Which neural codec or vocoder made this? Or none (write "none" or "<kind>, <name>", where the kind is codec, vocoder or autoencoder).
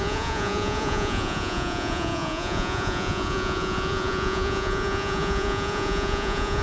vocoder, Vocos